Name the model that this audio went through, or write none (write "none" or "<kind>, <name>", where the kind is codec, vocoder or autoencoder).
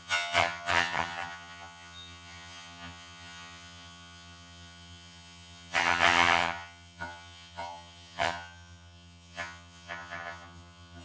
vocoder, HiFi-GAN